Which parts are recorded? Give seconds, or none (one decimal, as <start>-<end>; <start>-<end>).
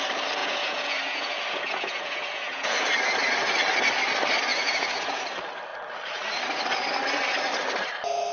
0.0-0.4; 2.9-4.5; 5.2-8.3